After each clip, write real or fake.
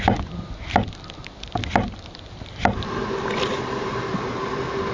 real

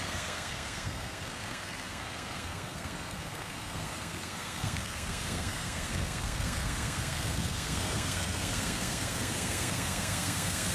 fake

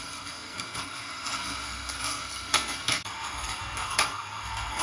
fake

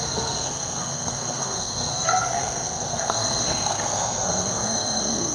fake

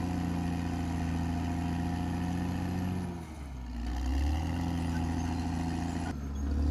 real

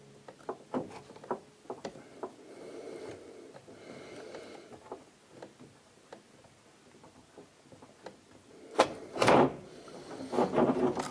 real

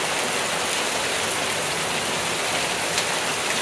real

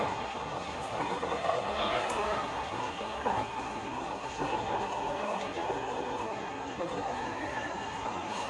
fake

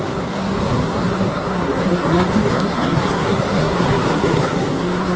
fake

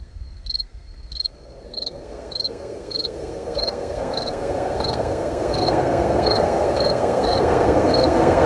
fake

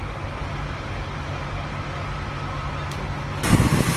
real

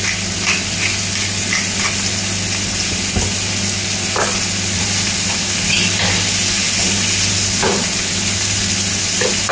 real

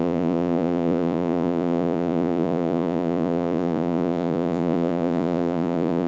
fake